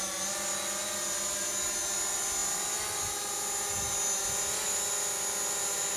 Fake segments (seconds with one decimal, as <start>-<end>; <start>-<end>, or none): none